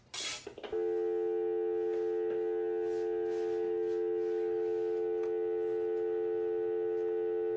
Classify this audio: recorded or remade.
recorded